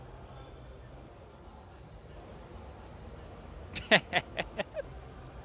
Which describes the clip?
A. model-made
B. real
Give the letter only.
B